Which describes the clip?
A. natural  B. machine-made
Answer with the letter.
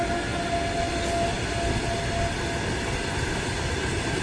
A